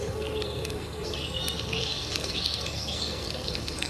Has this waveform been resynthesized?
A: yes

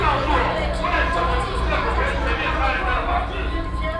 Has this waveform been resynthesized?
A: no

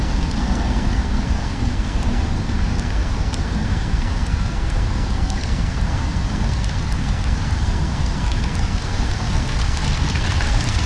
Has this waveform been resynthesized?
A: yes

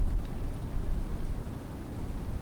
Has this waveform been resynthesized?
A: no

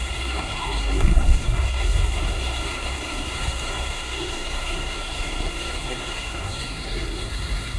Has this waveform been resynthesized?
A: yes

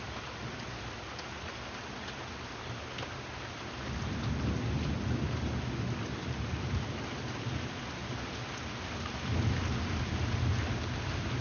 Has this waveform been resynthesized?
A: no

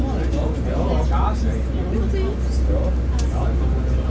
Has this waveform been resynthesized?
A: no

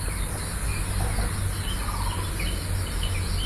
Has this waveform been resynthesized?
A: no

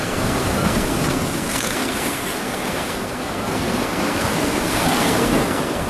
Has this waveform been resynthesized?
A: yes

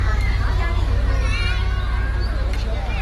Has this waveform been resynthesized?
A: no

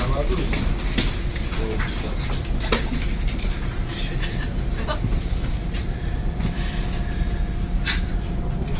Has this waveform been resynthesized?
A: yes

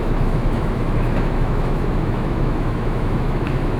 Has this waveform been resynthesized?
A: yes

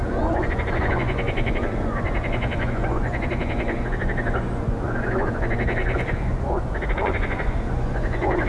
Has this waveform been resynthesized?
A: yes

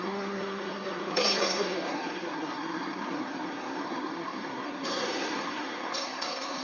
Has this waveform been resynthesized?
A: yes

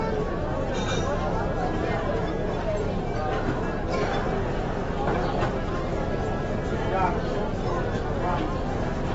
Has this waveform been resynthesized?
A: no